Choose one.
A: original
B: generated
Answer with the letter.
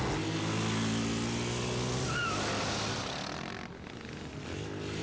A